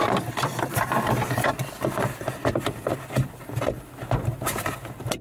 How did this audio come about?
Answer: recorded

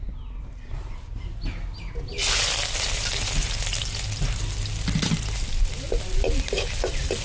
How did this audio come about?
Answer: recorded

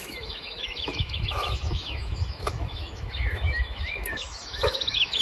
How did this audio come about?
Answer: remade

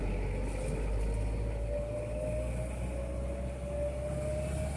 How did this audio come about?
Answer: recorded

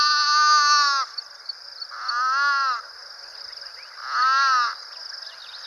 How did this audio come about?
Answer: recorded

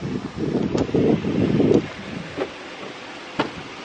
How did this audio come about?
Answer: recorded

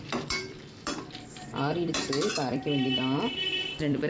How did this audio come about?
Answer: remade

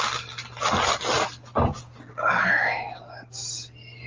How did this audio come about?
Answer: recorded